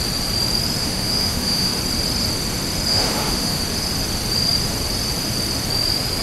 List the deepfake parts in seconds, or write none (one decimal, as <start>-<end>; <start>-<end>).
0.8-1.7; 2.9-3.6